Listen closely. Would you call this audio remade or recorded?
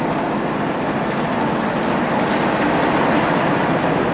recorded